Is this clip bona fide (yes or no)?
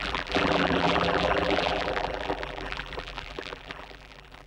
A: no